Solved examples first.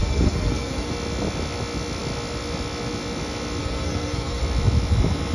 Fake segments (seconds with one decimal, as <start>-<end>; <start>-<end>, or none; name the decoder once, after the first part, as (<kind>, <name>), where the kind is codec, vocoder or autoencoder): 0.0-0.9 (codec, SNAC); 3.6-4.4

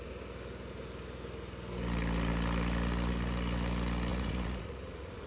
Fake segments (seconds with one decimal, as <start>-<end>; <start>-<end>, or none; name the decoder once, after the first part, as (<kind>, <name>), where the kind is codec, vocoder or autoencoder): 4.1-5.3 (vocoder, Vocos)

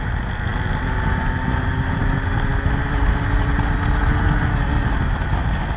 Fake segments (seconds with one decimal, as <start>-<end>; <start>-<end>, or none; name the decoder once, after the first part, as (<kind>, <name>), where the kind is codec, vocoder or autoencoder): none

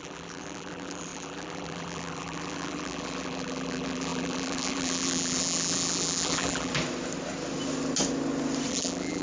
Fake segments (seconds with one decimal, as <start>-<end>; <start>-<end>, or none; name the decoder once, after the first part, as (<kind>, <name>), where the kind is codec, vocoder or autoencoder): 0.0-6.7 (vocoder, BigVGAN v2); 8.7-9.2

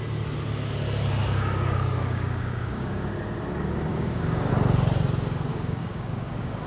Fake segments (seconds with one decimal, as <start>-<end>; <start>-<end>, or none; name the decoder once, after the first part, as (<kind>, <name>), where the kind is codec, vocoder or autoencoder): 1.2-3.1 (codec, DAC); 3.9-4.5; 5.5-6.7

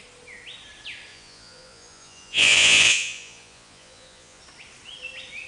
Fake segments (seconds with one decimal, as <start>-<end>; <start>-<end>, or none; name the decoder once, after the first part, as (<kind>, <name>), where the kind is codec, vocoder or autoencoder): 1.1-4.4 (vocoder, Vocos)

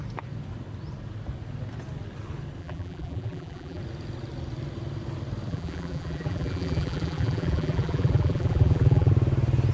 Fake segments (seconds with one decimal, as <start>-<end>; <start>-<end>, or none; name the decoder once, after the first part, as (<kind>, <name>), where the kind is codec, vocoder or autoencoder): 2.6-3.8 (vocoder, BigVGAN v2); 5.5-9.1